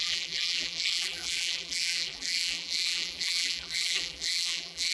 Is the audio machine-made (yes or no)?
yes